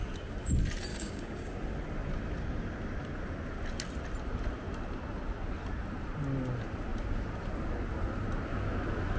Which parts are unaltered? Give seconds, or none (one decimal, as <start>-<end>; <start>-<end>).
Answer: 0.0-0.9; 1.6-9.2